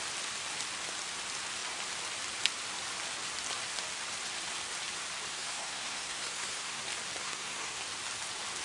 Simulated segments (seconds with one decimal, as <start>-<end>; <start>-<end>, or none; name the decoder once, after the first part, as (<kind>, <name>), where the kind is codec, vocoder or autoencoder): 5.3-6.8 (codec, SNAC); 7.2-7.8